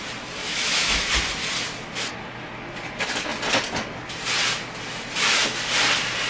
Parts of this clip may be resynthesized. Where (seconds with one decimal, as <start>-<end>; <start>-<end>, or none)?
0.4-1.1